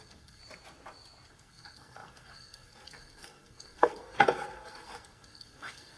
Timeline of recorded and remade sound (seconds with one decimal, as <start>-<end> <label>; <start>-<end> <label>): 0.0-0.4 remade; 0.4-1.3 recorded; 1.3-6.0 remade